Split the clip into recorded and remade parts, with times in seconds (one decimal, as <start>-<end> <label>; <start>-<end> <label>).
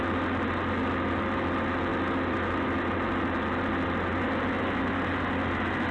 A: 0.0-5.9 recorded